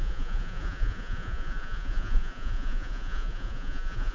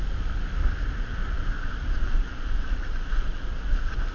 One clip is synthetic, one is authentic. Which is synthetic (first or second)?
first